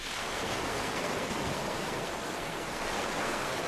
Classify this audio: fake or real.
fake